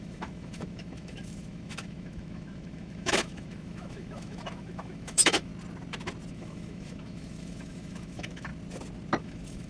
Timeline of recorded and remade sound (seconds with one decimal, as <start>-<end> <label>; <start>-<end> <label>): 0.0-5.5 remade; 5.5-6.3 recorded; 6.3-8.5 remade; 8.5-9.2 recorded; 9.2-9.7 remade